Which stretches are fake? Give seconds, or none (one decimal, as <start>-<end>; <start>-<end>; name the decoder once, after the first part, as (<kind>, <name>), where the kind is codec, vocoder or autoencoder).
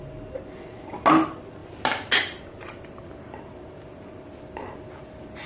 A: none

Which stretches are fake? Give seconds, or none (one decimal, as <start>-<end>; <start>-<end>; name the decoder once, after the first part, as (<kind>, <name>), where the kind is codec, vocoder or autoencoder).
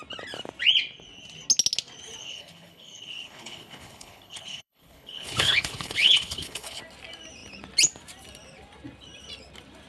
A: 2.2-6.8 (codec, HILCodec)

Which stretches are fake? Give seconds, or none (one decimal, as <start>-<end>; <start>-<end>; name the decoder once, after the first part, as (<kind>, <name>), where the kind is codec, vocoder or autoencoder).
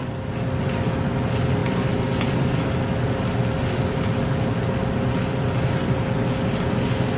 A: none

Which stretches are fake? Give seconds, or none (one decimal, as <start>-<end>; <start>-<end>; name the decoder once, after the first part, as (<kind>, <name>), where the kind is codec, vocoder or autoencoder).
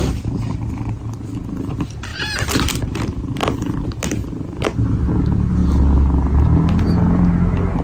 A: 2.1-2.7 (vocoder, BigVGAN v2); 4.2-5.1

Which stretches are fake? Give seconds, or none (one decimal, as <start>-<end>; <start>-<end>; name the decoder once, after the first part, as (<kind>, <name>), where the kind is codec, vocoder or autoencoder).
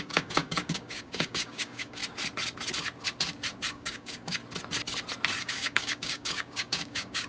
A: 0.0-2.0 (codec, DAC); 3.7-4.4; 5.4-7.3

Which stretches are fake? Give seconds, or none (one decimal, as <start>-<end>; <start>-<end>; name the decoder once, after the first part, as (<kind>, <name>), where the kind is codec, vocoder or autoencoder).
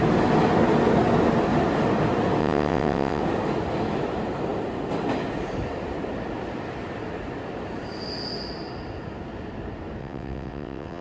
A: 2.4-3.2 (vocoder, WaveNeXt); 10.0-11.0